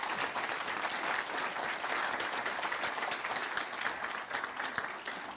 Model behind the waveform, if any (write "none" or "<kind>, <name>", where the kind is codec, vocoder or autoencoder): none